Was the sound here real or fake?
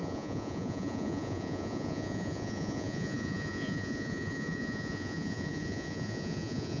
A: fake